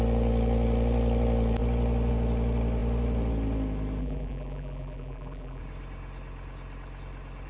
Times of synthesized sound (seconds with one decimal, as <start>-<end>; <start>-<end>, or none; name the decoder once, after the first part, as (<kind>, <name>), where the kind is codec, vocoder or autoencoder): 4.0-5.6 (vocoder, BigVGAN v2)